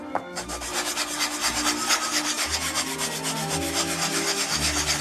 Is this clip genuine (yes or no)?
yes